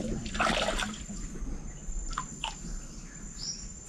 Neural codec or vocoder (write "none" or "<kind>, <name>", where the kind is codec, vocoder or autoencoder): none